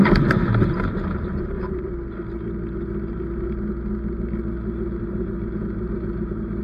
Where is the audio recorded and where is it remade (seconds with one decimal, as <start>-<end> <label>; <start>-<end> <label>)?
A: 0.0-1.9 remade; 1.9-5.0 recorded; 5.0-6.6 remade